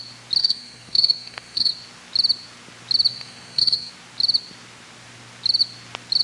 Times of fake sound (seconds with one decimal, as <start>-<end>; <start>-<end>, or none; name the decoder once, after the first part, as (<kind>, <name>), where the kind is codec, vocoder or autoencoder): 0.4-1.7 (codec, SNAC); 3.1-3.9